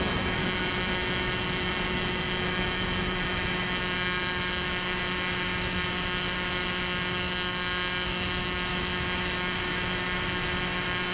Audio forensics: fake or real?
fake